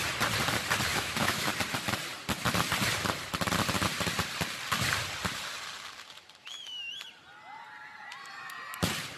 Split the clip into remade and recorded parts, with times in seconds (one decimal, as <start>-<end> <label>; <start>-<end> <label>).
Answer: 0.0-0.9 recorded; 0.9-1.5 remade; 1.5-6.4 recorded; 6.4-6.9 remade; 6.9-9.2 recorded